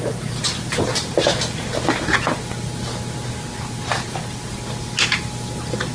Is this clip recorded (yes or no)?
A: yes